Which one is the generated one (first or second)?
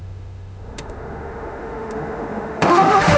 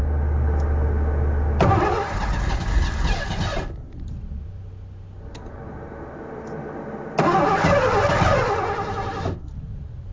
first